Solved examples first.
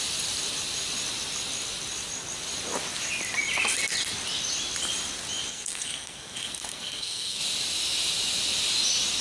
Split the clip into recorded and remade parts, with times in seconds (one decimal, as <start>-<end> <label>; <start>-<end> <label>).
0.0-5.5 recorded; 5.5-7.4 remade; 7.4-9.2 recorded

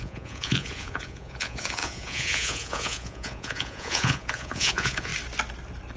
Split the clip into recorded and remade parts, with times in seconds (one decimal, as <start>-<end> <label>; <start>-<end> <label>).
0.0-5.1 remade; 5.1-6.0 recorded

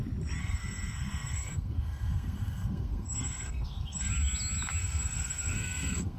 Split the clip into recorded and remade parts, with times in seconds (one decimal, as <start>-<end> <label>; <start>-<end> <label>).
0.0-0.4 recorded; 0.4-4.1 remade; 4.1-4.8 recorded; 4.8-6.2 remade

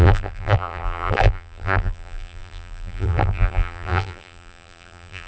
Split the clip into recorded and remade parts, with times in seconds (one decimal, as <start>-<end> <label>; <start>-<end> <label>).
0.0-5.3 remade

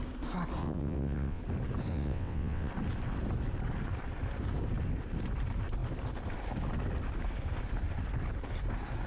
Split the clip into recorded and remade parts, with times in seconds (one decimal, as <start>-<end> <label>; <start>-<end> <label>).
0.0-0.6 recorded; 0.6-1.4 remade; 1.4-1.9 recorded; 1.9-2.7 remade; 2.7-9.1 recorded